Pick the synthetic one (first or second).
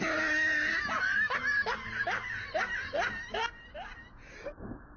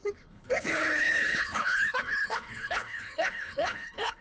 second